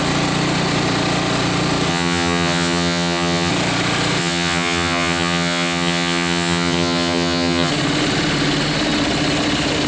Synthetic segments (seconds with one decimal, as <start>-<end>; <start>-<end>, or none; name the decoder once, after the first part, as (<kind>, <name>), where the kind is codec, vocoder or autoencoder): 1.9-3.5 (vocoder, HiFi-GAN); 4.2-7.7